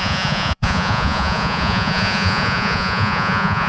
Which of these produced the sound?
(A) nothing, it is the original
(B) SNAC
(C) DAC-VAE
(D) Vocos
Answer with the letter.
D